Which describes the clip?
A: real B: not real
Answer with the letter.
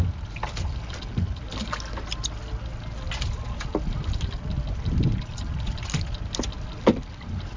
A